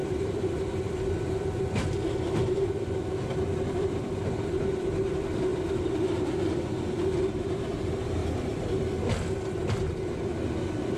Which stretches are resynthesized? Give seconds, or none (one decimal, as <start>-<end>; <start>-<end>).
0.0-4.3; 5.5-6.3; 8.2-8.7